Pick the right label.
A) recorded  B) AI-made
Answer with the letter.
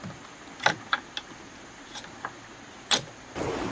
A